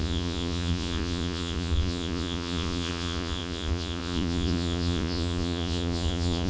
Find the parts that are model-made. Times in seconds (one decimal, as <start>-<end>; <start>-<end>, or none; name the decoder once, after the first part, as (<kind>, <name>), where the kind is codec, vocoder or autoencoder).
0.0-6.5 (vocoder, Vocos)